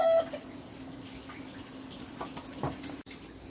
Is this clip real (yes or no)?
yes